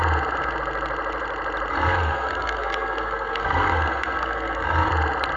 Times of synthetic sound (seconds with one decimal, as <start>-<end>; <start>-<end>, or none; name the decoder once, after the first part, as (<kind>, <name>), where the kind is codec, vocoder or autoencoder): 1.7-4.9 (codec, SNAC)